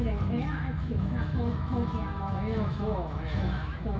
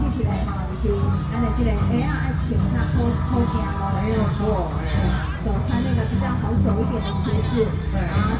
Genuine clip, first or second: second